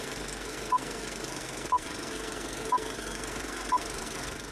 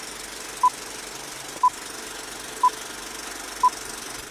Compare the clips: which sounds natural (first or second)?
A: second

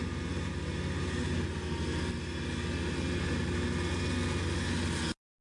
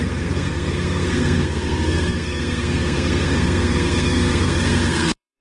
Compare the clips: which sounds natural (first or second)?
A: first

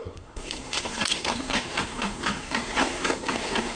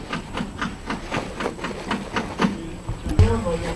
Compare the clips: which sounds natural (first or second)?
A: second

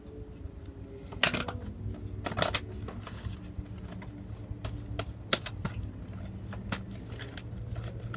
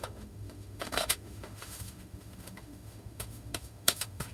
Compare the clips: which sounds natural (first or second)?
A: first